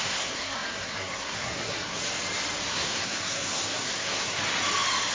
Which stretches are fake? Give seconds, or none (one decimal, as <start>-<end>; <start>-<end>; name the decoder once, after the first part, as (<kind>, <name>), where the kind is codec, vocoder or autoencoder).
0.0-2.0 (codec, SNAC); 2.7-4.4